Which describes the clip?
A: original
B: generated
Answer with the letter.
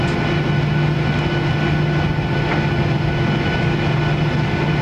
A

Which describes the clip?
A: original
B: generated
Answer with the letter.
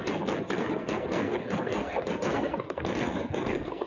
B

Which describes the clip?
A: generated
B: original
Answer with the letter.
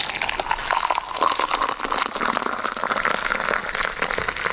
B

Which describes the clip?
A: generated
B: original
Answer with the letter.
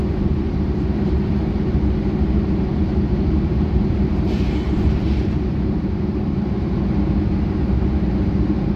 A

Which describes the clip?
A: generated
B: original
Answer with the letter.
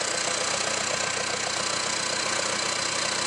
B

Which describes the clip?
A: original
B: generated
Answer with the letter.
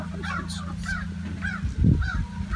A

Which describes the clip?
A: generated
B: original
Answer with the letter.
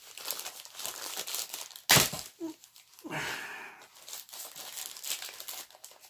B